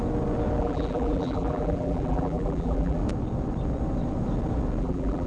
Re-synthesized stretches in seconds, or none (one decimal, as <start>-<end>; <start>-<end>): 0.6-3.0; 4.8-5.3